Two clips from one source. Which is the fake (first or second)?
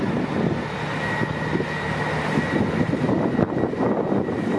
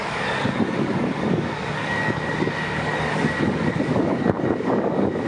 second